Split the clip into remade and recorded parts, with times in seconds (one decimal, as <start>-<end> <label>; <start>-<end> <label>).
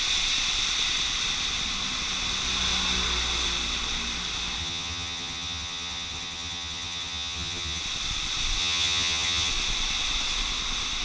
0.0-4.6 recorded; 4.6-7.8 remade; 7.8-8.6 recorded; 8.6-9.5 remade; 9.5-11.0 recorded